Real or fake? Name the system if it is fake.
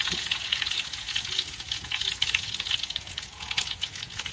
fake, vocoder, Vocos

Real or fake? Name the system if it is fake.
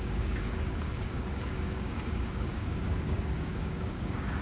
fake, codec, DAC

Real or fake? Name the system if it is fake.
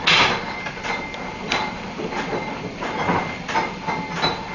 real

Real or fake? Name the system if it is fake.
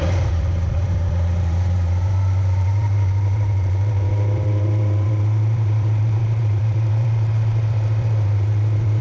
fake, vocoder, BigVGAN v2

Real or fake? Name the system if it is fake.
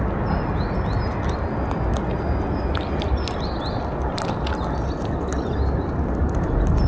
real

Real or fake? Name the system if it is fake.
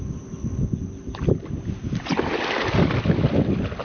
real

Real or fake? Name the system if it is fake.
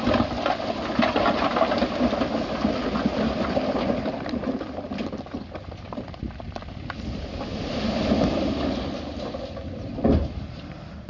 real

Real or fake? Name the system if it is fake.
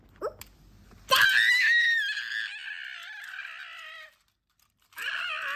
real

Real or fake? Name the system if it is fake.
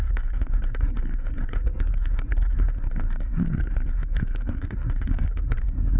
fake, codec, SNAC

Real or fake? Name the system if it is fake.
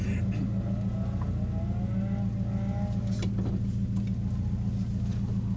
real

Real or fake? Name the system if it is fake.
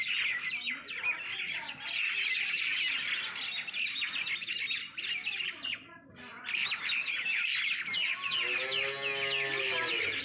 real